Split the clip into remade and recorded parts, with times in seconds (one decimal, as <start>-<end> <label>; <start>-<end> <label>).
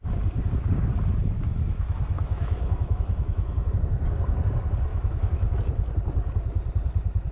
0.0-1.5 recorded; 1.5-3.7 remade; 3.7-4.9 recorded; 4.9-5.6 remade; 5.6-7.3 recorded